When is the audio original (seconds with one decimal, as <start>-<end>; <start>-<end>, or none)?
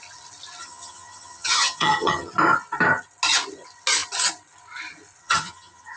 0.0-0.6; 2.3-5.2